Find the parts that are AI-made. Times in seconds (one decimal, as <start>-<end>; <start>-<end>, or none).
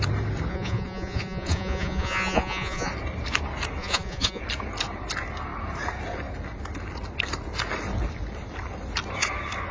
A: 0.5-2.9; 3.8-4.4